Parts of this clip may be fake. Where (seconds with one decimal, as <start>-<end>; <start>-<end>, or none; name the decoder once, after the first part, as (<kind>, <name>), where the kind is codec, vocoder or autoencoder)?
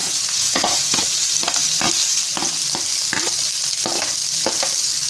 0.0-1.0 (vocoder, Vocos)